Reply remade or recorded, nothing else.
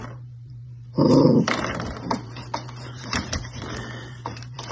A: remade